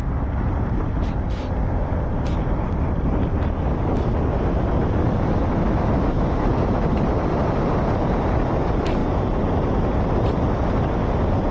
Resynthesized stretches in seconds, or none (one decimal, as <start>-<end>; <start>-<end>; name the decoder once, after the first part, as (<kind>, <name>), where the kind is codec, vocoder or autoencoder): none